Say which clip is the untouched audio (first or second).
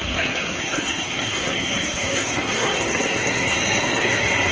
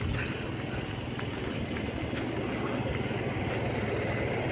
second